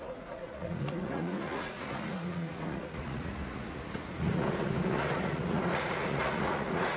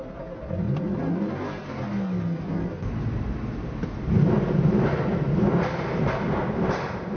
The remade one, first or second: first